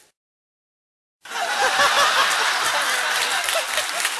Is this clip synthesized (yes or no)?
no